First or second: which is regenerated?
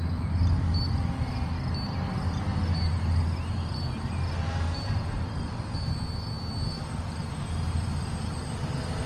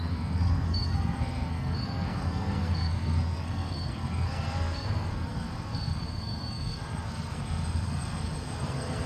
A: second